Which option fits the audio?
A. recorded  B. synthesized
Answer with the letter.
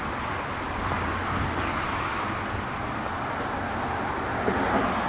A